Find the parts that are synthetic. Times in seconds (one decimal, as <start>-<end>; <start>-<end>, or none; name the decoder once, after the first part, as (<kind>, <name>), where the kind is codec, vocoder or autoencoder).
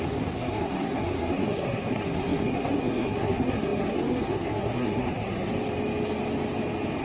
0.0-5.5 (codec, SNAC)